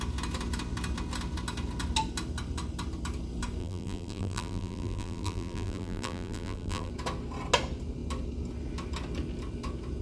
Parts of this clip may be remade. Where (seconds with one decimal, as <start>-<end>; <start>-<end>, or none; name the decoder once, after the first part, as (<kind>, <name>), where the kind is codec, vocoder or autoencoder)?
3.6-6.9 (vocoder, BigVGAN v2)